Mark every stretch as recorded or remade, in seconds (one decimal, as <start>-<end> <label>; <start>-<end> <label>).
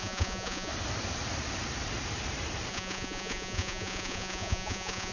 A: 0.0-0.7 remade; 0.7-2.7 recorded; 2.7-5.1 remade